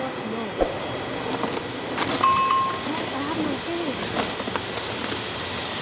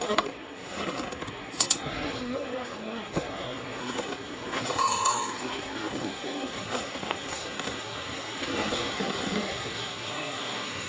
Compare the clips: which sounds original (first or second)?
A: first